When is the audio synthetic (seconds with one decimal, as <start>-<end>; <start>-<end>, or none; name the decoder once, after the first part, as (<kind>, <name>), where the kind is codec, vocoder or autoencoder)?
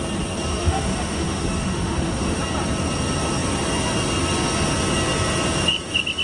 0.5-2.4 (autoencoder, DAC-VAE)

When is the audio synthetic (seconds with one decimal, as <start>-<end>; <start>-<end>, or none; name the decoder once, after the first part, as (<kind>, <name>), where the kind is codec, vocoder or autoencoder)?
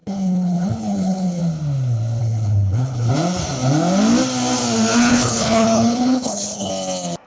0.0-1.4 (codec, HILCodec); 2.2-3.1; 5.1-6.7